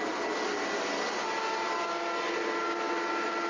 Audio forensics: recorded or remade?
recorded